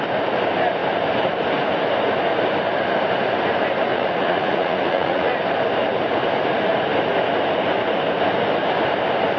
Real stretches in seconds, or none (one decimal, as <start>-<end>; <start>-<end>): 0.0-3.9; 5.3-9.4